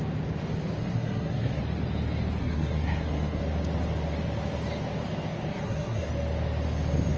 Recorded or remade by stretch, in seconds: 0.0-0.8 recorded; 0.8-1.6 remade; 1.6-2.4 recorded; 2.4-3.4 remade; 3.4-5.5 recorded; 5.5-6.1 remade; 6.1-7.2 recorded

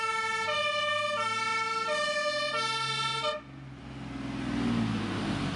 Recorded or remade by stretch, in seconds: 0.0-5.6 recorded

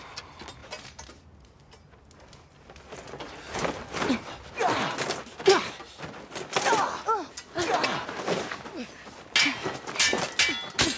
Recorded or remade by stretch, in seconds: 0.0-11.0 recorded

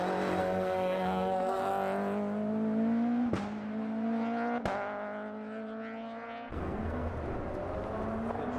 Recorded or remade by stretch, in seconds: 0.0-0.4 recorded; 0.4-1.7 remade; 1.7-6.5 recorded; 6.5-7.1 remade; 7.1-8.6 recorded

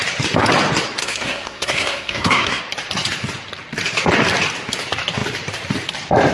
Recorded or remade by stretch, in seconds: 0.0-1.0 recorded; 1.0-2.6 remade; 2.6-6.3 recorded

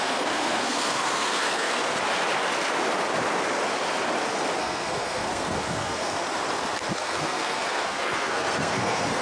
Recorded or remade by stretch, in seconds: 0.0-1.8 remade; 1.8-4.6 recorded; 4.6-6.2 remade; 6.2-6.9 recorded; 6.9-9.2 remade

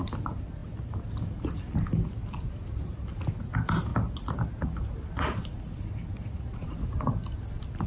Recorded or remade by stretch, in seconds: 0.0-7.9 recorded

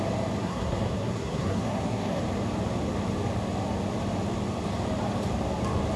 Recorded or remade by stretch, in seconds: 0.0-0.4 recorded; 0.4-2.2 remade; 2.2-6.0 recorded